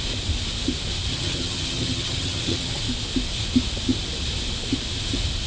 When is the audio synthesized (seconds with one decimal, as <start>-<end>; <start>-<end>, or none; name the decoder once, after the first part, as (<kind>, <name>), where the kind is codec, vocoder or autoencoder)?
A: 1.1-2.8 (vocoder, HiFi-GAN)